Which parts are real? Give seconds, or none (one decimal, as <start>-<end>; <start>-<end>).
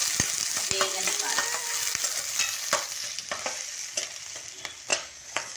0.0-4.9